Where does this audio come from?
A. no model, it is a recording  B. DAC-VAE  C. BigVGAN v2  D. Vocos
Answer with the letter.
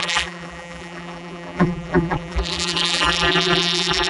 C